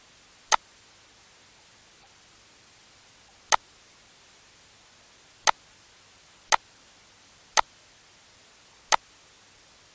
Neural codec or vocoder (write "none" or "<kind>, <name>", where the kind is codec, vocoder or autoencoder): none